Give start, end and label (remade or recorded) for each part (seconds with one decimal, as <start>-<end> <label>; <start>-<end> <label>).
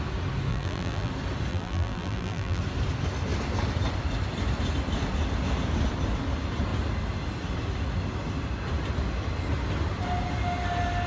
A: 0.0-0.5 recorded; 0.5-1.1 remade; 1.1-1.5 recorded; 1.5-2.6 remade; 2.6-11.1 recorded